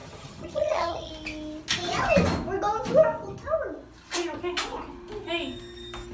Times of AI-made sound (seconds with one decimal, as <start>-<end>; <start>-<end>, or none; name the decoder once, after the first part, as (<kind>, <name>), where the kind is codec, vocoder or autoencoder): 0.0-1.1 (vocoder, HiFi-GAN)